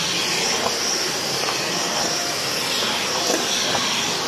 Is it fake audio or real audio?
real